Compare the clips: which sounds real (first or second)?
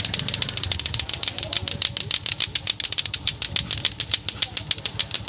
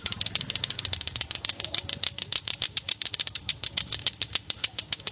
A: first